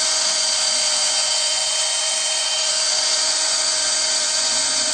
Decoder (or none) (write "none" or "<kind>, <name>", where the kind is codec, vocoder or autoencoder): vocoder, Vocos